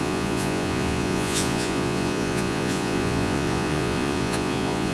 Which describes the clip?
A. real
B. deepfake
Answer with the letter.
B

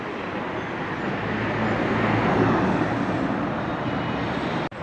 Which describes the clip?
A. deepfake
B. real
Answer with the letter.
B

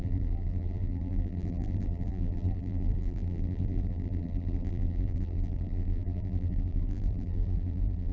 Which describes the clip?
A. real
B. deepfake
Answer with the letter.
B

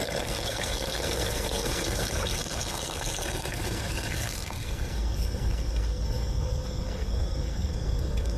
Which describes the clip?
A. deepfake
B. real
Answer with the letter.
A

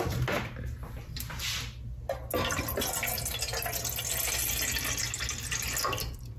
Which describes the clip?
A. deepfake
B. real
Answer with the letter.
B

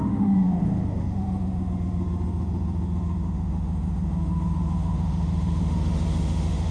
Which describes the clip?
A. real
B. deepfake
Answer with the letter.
B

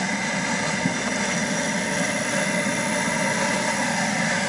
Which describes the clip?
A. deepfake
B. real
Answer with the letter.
B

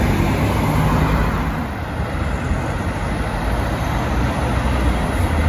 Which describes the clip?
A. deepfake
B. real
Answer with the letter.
B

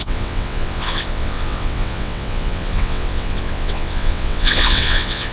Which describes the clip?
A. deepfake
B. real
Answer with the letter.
A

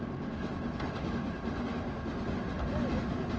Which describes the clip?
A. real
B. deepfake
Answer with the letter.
A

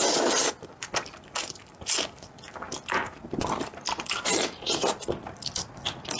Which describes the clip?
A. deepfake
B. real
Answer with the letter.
B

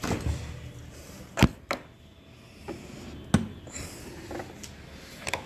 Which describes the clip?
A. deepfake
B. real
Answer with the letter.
B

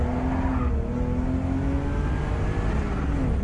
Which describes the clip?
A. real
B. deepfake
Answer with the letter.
A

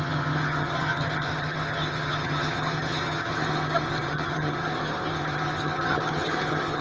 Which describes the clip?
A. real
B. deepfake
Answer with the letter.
B